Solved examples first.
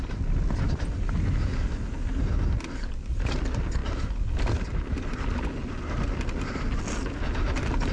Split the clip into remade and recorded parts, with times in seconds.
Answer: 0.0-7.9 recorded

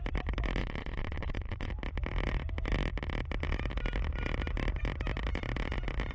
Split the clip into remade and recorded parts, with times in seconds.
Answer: 0.0-0.6 recorded; 0.6-1.7 remade; 1.7-6.1 recorded

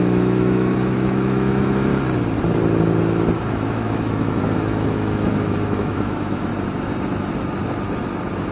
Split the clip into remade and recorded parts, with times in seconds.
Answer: 0.0-1.9 remade; 1.9-3.5 recorded; 3.5-6.5 remade; 6.5-8.5 recorded

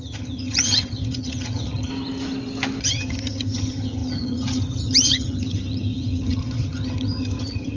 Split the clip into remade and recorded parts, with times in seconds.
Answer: 0.0-1.9 remade; 1.9-2.8 recorded; 2.8-7.8 remade

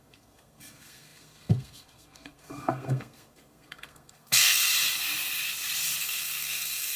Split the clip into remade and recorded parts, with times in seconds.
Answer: 0.0-4.7 remade; 4.7-6.0 recorded; 6.0-7.0 remade

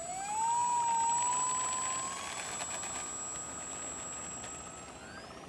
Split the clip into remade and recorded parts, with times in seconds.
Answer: 0.0-5.5 recorded

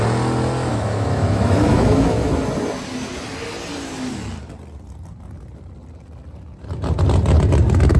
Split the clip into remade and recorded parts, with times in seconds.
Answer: 0.0-0.7 recorded; 0.7-2.3 remade; 2.3-8.0 recorded

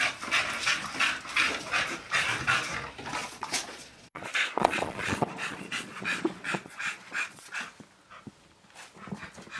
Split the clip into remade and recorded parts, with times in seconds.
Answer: 0.0-3.2 recorded; 3.2-7.6 remade; 7.6-9.6 recorded